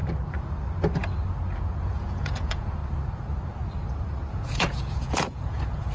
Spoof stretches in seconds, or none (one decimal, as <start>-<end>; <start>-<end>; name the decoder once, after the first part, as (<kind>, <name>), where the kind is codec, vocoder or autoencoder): 1.8-2.8 (vocoder, Vocos); 4.3-5.9